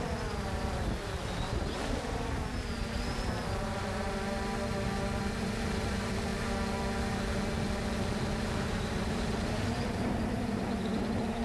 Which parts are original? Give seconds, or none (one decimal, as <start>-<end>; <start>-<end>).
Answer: 6.3-8.4